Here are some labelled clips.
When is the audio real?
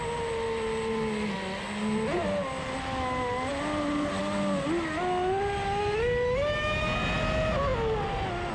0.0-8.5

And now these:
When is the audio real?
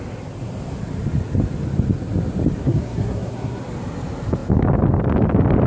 0.0-2.6; 3.6-5.7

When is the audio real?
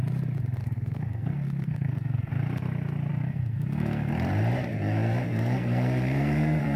0.0-0.6; 2.3-3.1; 4.1-4.7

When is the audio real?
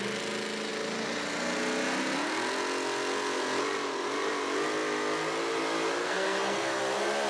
0.0-6.0; 6.8-7.3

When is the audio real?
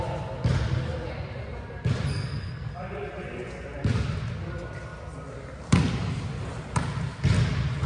0.0-2.1; 2.7-7.9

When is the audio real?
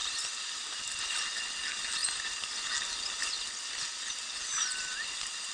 0.0-5.5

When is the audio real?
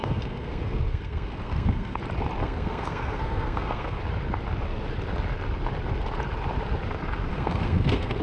2.0-2.4; 4.0-7.3